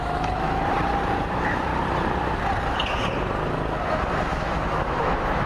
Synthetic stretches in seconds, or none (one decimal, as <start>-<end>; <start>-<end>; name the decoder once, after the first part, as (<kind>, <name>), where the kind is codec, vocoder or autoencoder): 0.0-0.7 (autoencoder, DAC-VAE); 1.2-1.7; 4.1-5.5